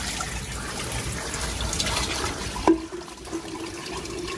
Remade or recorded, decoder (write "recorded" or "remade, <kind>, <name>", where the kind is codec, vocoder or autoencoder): recorded